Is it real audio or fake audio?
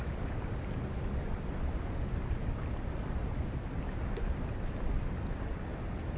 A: real